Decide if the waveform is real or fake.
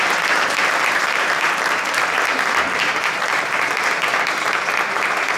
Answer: fake